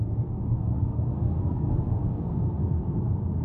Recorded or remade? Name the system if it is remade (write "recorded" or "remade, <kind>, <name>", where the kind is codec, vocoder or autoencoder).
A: remade, codec, SNAC